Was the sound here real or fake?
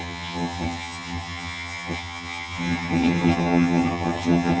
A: fake